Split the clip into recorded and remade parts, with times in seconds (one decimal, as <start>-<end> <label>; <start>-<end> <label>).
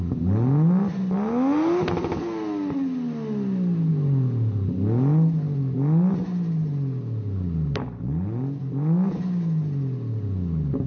0.0-10.9 recorded